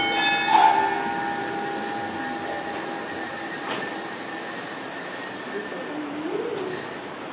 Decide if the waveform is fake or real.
real